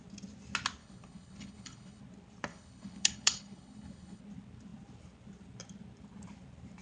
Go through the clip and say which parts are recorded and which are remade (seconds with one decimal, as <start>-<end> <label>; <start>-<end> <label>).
0.0-0.8 recorded; 0.8-2.0 remade; 2.0-2.5 recorded; 2.5-4.2 remade; 4.2-6.8 recorded